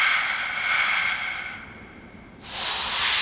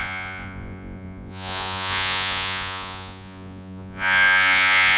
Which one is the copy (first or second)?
second